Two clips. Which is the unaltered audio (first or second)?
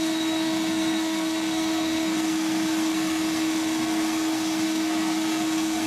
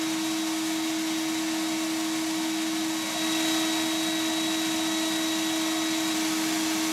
second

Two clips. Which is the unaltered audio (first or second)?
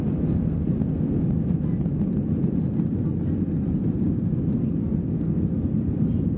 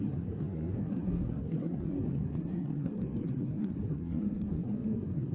first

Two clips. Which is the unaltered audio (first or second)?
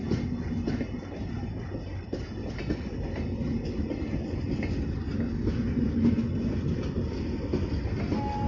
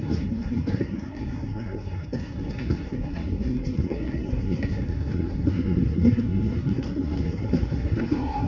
first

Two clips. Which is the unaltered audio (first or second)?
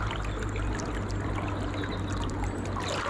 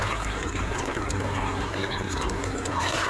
first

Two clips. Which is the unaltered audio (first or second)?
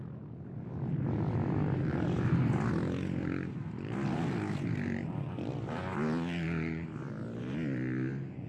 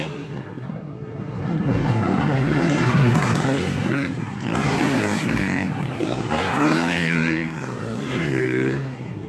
first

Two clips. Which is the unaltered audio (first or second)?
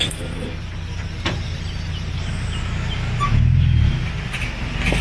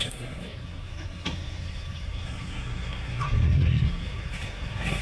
first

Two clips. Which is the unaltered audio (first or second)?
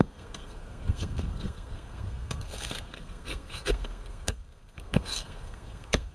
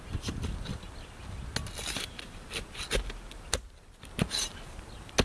second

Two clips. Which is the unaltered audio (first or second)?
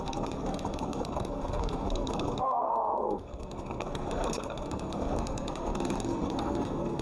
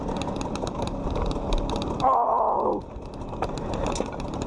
second